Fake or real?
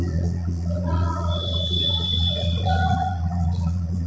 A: fake